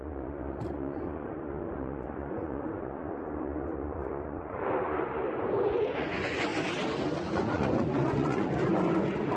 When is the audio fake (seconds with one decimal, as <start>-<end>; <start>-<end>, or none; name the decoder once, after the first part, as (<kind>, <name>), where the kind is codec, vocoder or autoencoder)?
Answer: 0.0-6.5 (vocoder, Vocos); 7.2-9.4